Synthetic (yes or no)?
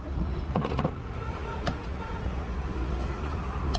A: yes